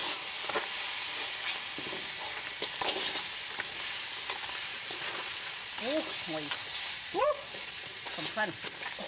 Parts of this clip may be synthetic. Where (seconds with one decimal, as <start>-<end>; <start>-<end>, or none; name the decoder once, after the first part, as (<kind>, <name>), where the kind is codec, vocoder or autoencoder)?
4.7-5.7 (vocoder, Vocos); 7.1-8.1

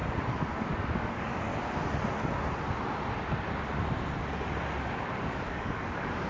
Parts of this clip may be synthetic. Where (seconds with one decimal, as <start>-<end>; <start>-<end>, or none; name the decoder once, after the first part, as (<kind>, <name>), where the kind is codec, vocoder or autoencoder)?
0.6-1.5 (codec, DAC); 5.3-6.3

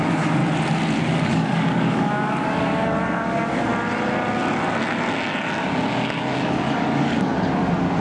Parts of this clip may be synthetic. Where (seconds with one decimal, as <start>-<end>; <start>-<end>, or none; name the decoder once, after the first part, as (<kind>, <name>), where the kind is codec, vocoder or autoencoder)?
0.0-0.4 (codec, DAC); 1.0-3.7; 5.6-7.3

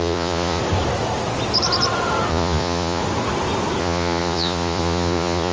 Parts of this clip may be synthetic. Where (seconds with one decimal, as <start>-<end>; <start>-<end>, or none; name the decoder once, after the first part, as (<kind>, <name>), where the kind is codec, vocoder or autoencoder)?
0.0-0.6 (vocoder, Vocos); 2.3-3.0; 3.8-5.5